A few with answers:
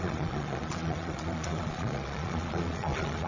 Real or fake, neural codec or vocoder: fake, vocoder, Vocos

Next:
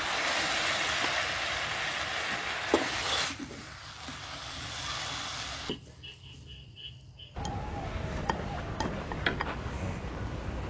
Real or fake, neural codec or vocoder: real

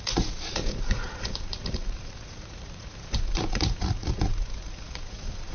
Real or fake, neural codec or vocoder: fake, vocoder, Vocos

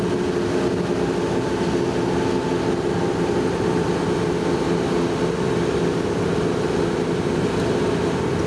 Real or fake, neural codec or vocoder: real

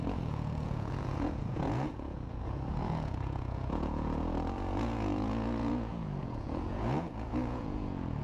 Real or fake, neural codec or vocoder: fake, vocoder, Vocos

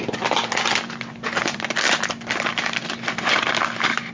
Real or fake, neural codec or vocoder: real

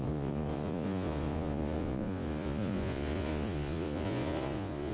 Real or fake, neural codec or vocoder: fake, vocoder, Vocos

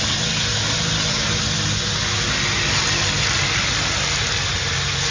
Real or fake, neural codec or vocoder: real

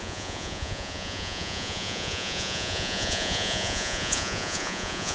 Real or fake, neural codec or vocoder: fake, vocoder, Vocos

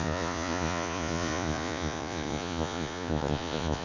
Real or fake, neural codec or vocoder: fake, vocoder, Vocos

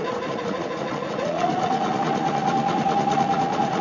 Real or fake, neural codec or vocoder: fake, vocoder, Vocos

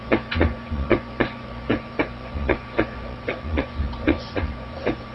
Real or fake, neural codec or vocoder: fake, vocoder, Vocos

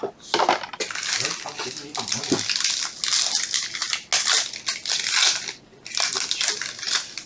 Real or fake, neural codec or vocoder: real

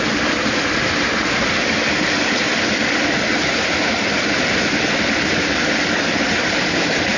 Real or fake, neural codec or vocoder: real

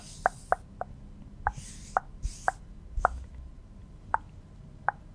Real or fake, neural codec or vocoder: real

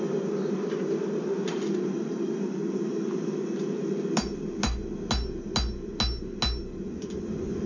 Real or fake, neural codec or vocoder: real